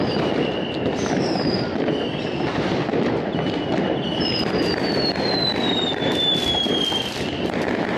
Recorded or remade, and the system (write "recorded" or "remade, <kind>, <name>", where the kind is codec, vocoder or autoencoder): remade, vocoder, BigVGAN v2